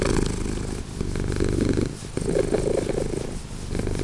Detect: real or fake real